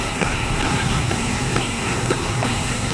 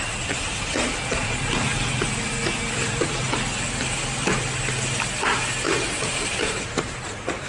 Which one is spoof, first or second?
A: first